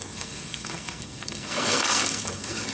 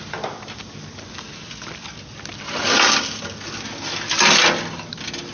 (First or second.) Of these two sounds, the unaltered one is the second